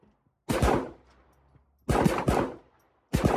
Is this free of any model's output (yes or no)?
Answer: yes